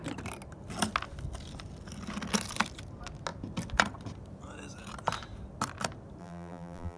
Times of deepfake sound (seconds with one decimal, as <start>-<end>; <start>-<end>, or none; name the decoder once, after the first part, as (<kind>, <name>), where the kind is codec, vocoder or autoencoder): 6.2-7.0 (vocoder, BigVGAN v2)